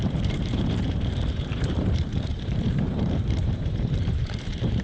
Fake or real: fake